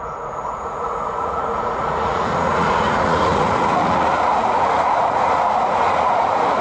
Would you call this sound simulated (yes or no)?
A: yes